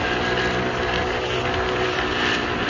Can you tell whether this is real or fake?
real